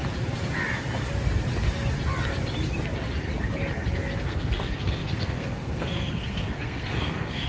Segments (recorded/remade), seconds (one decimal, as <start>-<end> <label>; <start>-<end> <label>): 0.0-4.2 recorded; 4.2-7.5 remade